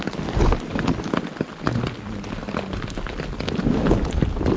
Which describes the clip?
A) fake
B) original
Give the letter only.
B